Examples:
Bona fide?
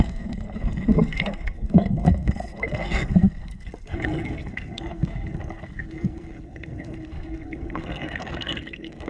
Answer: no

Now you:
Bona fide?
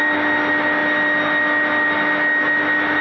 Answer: yes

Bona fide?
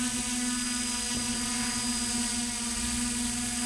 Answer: yes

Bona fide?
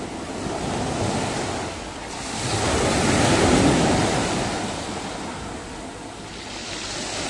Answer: yes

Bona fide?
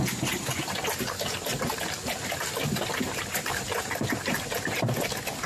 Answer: yes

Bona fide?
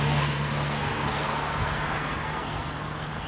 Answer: no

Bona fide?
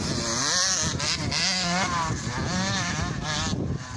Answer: yes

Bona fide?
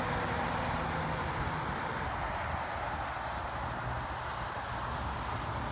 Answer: yes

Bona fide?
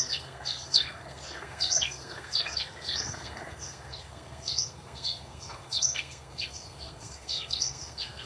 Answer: no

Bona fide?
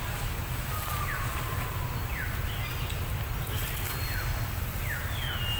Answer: yes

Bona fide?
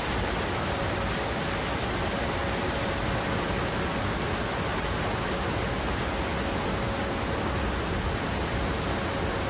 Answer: yes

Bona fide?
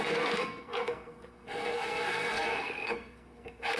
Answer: no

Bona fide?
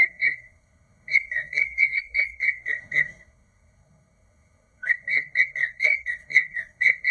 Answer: no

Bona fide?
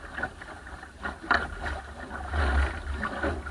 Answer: yes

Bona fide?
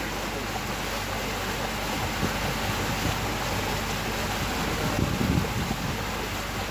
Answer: yes